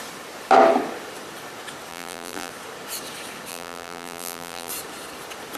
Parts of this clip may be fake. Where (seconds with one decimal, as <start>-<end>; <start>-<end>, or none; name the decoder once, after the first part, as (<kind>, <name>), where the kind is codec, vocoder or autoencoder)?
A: 1.9-2.5 (vocoder, BigVGAN v2); 3.5-4.7